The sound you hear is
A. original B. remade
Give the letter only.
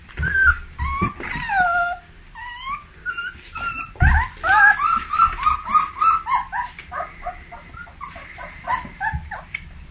A